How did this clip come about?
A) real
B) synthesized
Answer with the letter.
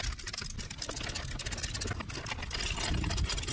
A